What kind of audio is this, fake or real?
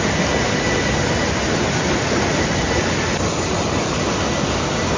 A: real